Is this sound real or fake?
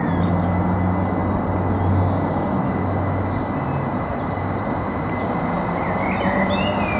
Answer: real